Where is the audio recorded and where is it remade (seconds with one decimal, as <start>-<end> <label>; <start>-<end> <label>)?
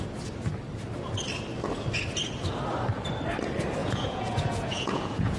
0.0-3.8 recorded; 3.8-5.4 remade